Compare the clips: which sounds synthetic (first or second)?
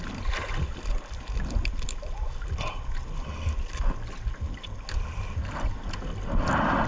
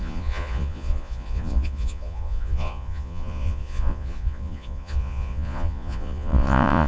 second